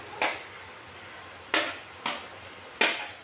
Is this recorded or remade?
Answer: recorded